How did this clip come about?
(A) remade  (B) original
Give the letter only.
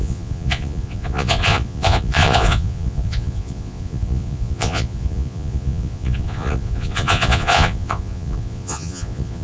A